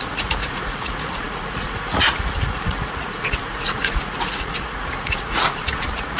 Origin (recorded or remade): remade